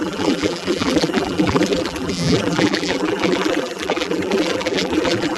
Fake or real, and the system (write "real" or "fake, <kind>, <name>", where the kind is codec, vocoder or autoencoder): fake, vocoder, BigVGAN v2